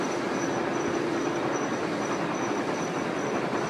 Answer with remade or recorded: recorded